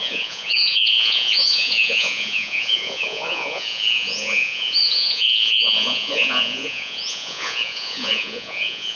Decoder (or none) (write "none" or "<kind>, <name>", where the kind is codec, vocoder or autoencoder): vocoder, Vocos